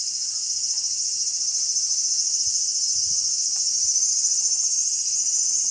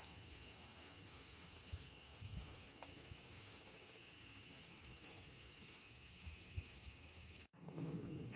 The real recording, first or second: first